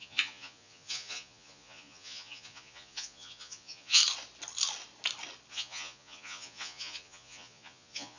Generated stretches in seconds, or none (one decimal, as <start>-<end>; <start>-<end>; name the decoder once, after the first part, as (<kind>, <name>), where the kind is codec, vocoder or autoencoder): 0.0-4.0 (vocoder, Vocos); 5.5-8.2